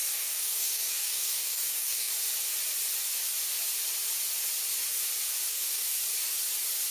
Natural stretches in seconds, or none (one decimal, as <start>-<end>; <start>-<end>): 2.1-5.5; 6.0-6.9